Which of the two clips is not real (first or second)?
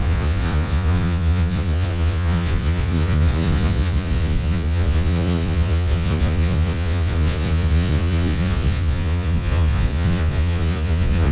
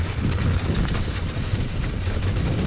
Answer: first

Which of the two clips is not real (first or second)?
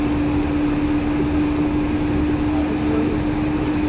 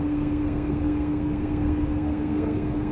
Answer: second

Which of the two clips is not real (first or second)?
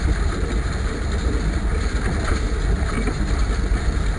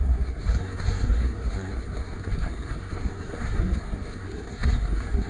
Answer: second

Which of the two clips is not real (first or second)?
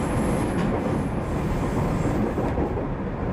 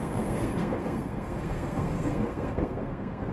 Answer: second